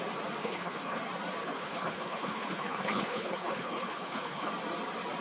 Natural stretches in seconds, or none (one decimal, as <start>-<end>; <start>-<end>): 0.0-0.4; 1.0-1.4; 4.5-5.2